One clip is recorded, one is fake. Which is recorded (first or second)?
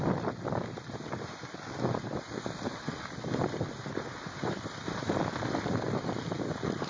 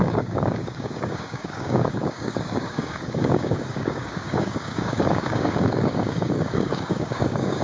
first